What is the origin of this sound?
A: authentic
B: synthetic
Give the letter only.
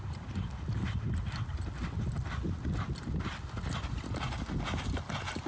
A